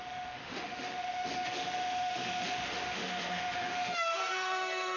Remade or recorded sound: remade